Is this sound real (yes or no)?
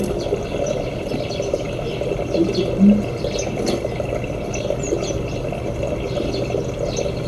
yes